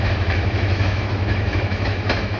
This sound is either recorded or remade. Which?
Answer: remade